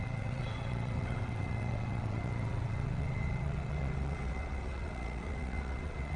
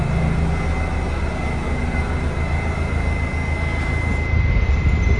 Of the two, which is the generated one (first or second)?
first